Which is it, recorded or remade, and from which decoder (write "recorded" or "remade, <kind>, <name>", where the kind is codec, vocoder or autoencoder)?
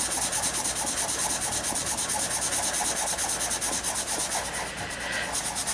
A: recorded